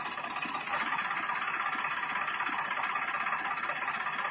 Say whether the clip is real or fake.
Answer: real